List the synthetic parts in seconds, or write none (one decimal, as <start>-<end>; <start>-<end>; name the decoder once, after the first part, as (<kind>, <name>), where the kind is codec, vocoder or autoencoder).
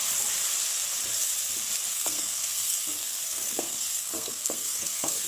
1.9-5.3 (codec, SNAC)